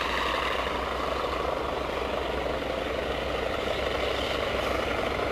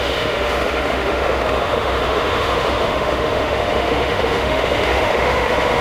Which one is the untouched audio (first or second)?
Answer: first